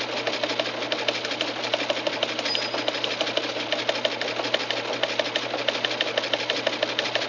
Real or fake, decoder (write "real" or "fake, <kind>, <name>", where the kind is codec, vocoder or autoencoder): real